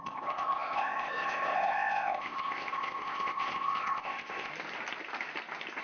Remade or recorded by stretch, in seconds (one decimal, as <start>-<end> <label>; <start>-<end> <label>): 0.0-4.5 remade; 4.5-5.8 recorded